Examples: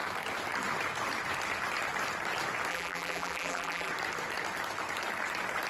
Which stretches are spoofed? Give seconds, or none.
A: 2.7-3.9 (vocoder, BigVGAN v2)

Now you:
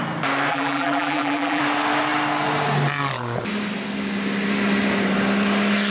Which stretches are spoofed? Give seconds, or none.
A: 0.5-1.6 (vocoder, BigVGAN v2)

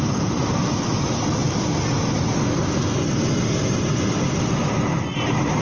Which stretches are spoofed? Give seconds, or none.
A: 0.0-1.4 (vocoder, BigVGAN v2); 4.5-5.6

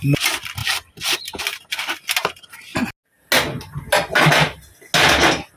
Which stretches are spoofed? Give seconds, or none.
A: 0.6-1.4 (vocoder, BigVGAN v2)

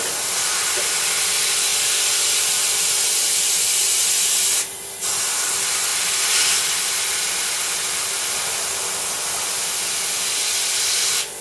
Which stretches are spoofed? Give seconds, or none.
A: none

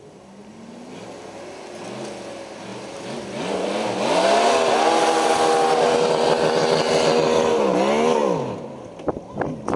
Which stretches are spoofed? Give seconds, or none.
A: 2.7-5.3 (vocoder, BigVGAN v2); 8.2-8.8

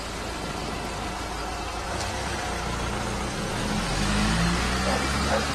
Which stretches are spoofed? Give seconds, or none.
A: 1.4-2.1 (vocoder, BigVGAN v2)